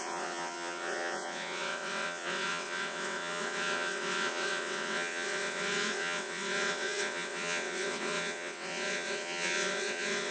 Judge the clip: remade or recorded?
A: remade